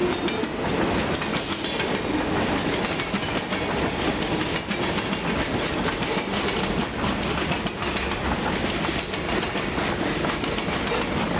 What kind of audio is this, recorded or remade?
recorded